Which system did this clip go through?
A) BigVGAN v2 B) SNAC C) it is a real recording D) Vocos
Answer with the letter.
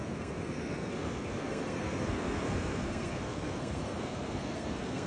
B